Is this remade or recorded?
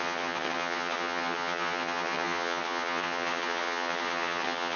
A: remade